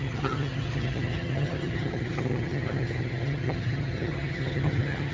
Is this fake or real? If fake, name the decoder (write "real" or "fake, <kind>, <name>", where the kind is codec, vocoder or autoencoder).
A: fake, vocoder, HiFi-GAN